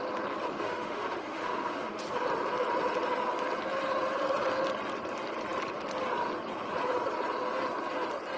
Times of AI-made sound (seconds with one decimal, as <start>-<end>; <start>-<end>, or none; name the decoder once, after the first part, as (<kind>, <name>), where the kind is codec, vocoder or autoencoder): 0.5-2.0 (autoencoder, DAC-VAE)